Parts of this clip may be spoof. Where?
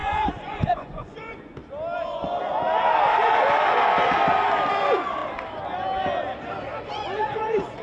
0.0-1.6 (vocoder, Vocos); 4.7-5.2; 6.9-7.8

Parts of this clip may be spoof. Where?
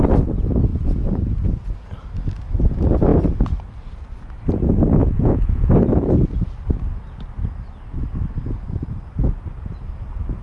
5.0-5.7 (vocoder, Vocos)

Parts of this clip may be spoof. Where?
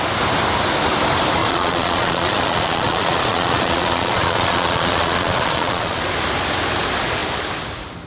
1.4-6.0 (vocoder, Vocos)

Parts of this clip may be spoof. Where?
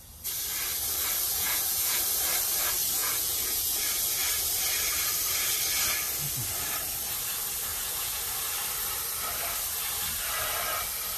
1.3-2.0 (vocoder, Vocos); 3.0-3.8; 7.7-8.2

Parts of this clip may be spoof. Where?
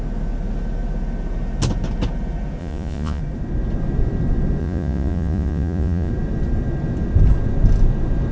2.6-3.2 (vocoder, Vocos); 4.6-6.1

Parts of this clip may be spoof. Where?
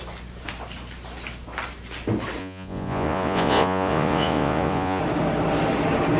2.4-5.0 (vocoder, Vocos)